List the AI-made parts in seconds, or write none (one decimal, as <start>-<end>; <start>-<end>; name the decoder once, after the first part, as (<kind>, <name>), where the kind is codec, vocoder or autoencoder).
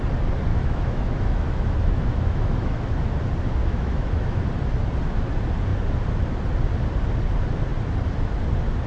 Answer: 0.5-3.0 (autoencoder, DAC-VAE); 3.6-4.4